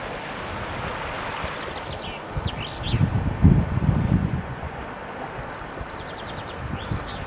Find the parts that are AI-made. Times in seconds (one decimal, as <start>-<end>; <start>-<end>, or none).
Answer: 4.2-4.8